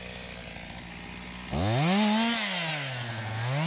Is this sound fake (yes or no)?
no